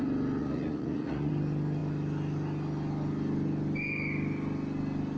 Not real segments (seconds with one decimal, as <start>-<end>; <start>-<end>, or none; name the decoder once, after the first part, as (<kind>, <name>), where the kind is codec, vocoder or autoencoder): 0.4-1.3 (vocoder, Vocos)